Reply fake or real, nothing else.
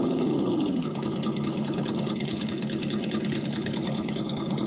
fake